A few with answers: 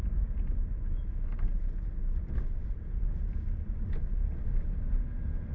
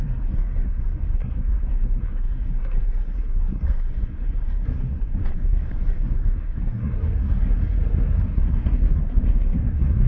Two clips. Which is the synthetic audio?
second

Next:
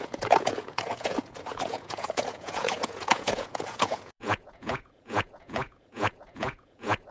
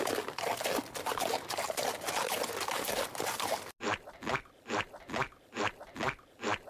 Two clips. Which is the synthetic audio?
first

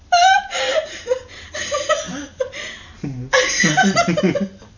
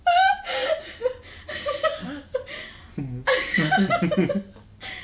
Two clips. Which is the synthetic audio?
first